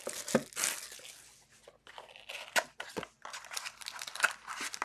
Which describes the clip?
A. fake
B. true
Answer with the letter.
B